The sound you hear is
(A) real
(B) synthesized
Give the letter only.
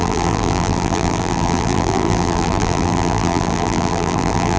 B